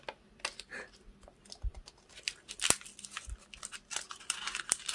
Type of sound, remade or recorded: recorded